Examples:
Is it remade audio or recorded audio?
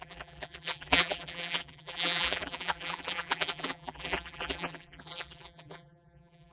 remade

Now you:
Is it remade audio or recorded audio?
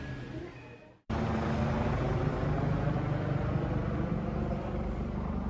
remade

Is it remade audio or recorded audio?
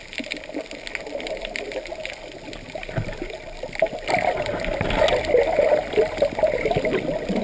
recorded